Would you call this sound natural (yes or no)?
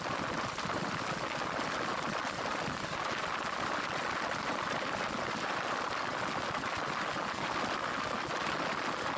yes